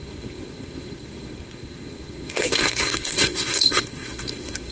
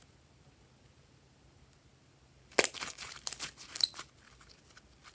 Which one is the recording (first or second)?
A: second